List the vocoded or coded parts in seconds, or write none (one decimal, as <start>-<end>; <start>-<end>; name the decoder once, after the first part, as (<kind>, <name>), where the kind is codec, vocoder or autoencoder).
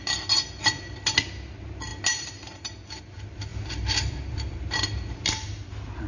none